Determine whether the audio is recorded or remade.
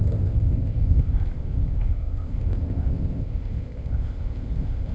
remade